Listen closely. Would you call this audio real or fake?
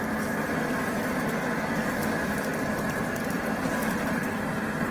real